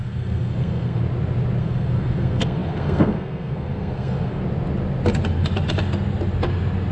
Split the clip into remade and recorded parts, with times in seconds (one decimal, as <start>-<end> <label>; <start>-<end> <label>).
0.0-1.0 remade; 1.0-1.6 recorded; 1.6-4.4 remade; 4.4-6.9 recorded